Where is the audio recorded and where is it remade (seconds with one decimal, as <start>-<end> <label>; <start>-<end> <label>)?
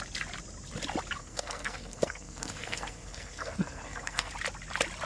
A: 0.0-1.2 recorded; 1.2-4.3 remade; 4.3-5.1 recorded